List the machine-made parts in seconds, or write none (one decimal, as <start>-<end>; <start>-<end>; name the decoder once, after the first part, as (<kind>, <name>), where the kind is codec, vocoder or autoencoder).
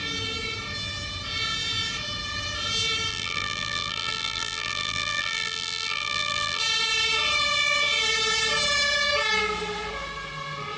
3.1-6.6 (vocoder, BigVGAN v2)